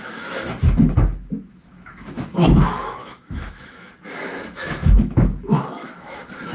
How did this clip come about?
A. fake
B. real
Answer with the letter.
A